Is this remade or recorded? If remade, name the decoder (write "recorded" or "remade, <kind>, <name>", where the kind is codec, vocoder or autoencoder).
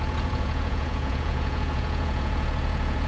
remade, vocoder, Vocos